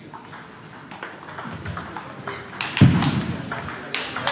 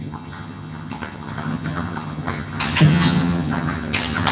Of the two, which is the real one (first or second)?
first